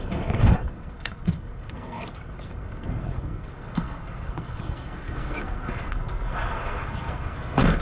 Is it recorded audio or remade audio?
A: remade